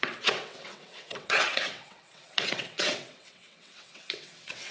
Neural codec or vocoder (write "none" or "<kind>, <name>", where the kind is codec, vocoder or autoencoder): vocoder, WaveNeXt